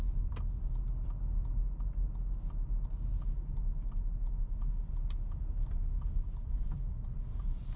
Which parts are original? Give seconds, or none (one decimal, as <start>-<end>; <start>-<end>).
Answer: 0.0-7.8

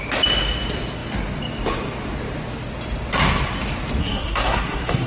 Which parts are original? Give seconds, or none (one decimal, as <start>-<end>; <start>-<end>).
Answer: 0.0-4.0

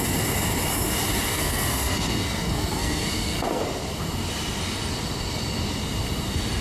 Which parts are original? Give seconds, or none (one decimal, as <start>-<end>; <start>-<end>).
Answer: 0.0-1.3; 3.6-6.6

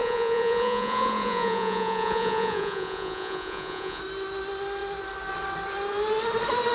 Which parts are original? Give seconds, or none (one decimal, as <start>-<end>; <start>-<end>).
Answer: 4.0-6.7

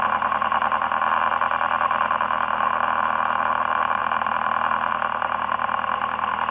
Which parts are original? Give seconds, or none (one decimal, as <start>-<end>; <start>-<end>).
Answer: 0.0-6.5

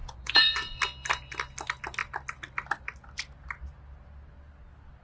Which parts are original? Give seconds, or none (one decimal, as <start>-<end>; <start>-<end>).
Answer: 0.8-5.0